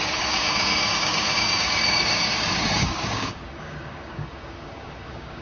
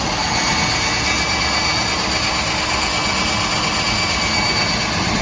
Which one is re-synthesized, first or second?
first